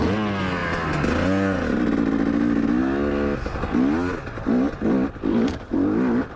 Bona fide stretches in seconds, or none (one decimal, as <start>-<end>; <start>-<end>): 0.0-6.4

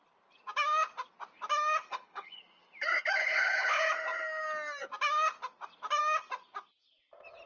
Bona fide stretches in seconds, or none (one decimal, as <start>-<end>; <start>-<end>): 0.0-1.9; 2.4-3.2; 3.9-7.5

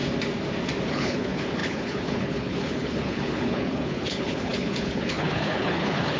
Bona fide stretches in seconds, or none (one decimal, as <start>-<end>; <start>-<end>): 0.0-0.9

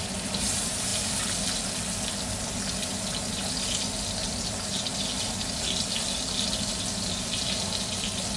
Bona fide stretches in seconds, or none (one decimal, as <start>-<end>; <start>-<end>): 0.0-8.4

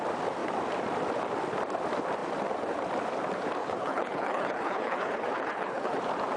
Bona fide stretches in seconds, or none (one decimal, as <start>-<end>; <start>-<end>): 0.0-3.6; 6.0-6.4

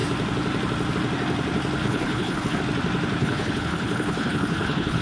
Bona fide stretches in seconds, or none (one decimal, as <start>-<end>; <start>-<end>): 0.0-1.8; 2.6-3.2

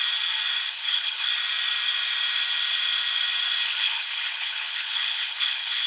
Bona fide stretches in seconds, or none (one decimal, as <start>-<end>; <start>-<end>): 0.0-0.7; 1.3-3.7